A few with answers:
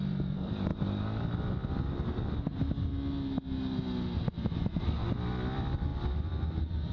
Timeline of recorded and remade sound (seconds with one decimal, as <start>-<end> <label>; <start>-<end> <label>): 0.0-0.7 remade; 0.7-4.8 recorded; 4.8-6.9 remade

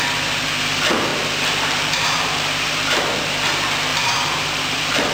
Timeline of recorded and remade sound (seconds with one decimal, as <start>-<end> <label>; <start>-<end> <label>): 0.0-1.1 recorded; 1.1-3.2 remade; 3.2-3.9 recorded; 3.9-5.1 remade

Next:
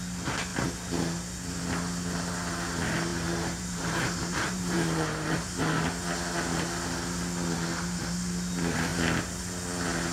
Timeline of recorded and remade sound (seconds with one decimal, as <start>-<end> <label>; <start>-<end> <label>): 0.0-3.1 recorded; 3.1-5.6 remade; 5.6-8.9 recorded; 8.9-9.4 remade; 9.4-10.1 recorded